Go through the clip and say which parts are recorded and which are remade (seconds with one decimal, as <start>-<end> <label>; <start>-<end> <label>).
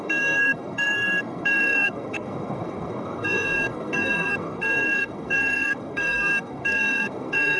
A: 0.0-7.6 remade